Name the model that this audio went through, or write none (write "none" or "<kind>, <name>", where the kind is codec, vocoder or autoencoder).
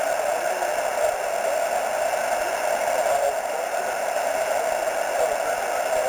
none